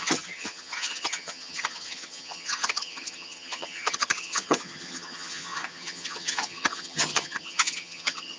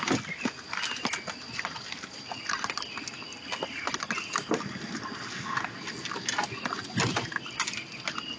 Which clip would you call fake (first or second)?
first